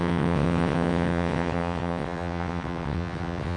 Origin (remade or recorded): remade